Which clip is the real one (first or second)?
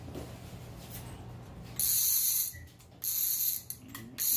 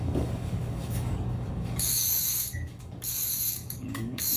first